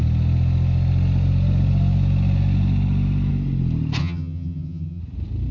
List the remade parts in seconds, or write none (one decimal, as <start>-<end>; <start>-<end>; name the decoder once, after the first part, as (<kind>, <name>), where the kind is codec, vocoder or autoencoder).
4.0-5.0 (vocoder, HiFi-GAN)